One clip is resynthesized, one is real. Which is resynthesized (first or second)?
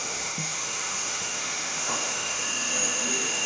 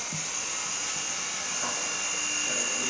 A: first